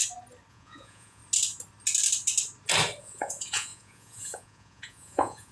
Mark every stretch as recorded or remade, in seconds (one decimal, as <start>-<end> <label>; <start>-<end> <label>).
0.0-0.5 recorded; 0.5-1.2 remade; 1.2-3.0 recorded; 3.0-5.5 remade